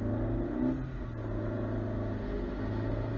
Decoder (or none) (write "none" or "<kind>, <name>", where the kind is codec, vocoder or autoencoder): none